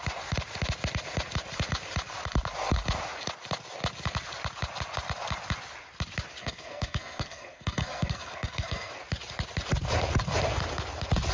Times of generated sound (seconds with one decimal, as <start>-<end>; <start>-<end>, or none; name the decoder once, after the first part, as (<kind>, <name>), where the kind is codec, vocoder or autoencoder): 6.4-8.9 (codec, SNAC)